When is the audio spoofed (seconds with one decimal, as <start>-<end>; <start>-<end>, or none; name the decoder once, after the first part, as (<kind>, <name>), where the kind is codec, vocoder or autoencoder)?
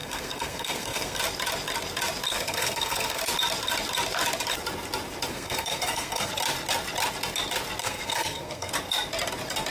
0.0-1.2 (codec, SNAC); 2.3-3.2; 5.3-6.3; 7.8-8.7